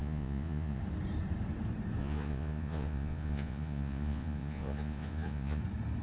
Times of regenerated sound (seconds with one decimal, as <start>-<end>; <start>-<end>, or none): 0.0-0.8; 2.0-5.6